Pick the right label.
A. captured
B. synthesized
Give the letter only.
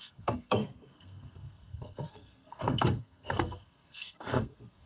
B